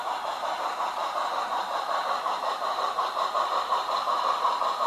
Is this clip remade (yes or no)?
yes